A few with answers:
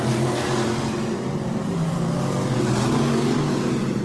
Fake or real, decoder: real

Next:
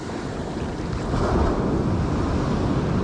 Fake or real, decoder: real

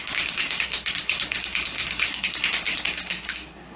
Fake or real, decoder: fake, codec, SNAC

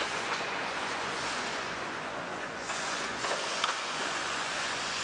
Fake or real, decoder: fake, vocoder, Vocos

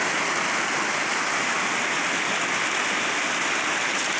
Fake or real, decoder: real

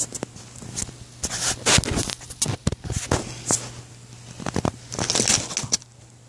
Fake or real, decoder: real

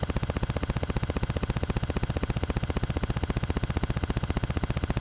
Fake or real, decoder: fake, vocoder, HiFi-GAN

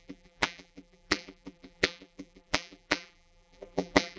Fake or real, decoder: fake, vocoder, BigVGAN v2